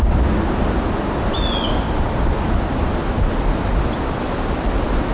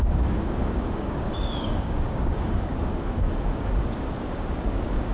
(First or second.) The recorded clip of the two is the first